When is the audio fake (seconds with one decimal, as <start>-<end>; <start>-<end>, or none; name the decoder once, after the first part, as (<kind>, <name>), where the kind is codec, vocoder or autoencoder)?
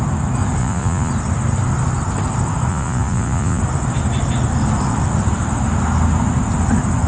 0.6-1.1 (vocoder, Vocos); 2.7-3.6